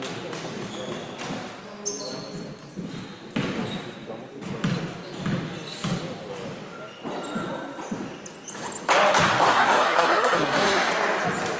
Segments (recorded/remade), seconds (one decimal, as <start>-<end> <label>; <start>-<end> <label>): 0.0-9.5 recorded; 9.5-10.9 remade; 10.9-11.6 recorded